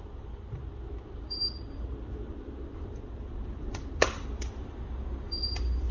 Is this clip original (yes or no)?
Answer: no